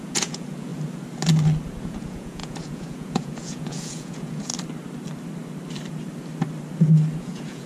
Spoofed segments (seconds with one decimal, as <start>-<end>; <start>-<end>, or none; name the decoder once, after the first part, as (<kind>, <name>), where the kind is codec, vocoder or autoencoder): 0.0-0.7 (vocoder, Vocos); 1.8-4.5; 7.2-7.7